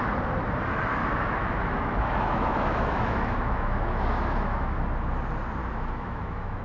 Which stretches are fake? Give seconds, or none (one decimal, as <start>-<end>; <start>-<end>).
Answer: 1.0-4.8; 5.6-6.6